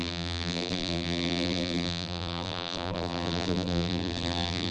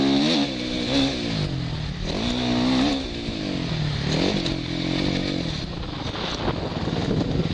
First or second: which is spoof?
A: first